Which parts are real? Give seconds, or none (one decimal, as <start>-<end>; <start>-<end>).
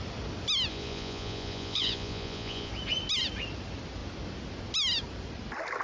0.0-0.7; 2.7-5.8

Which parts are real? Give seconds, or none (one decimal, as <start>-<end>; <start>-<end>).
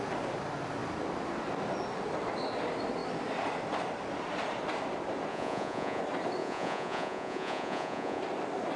0.0-5.3; 6.0-6.4; 8.2-8.8